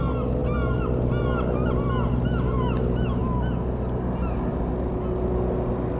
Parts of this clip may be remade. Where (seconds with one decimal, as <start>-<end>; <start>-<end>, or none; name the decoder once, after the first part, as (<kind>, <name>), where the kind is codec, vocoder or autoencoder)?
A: none